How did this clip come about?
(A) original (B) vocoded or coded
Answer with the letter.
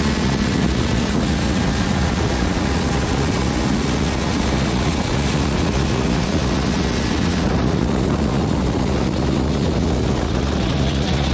B